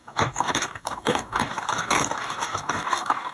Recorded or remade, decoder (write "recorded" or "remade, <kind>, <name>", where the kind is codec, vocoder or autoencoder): remade, codec, DAC